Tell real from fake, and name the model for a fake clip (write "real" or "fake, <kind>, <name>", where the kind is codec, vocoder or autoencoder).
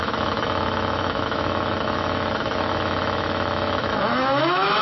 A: fake, autoencoder, DAC-VAE